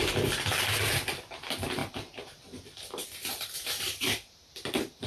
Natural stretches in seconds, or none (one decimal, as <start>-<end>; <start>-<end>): 0.0-1.8